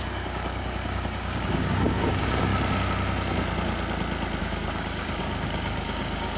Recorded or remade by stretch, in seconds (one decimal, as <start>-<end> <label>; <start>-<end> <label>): 0.0-2.5 remade; 2.5-4.4 recorded; 4.4-6.4 remade